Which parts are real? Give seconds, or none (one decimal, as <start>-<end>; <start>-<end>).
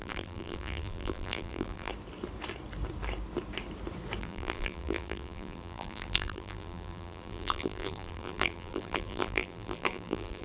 1.9-4.2